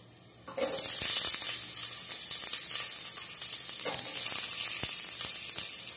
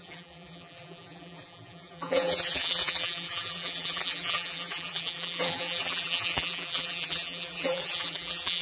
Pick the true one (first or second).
first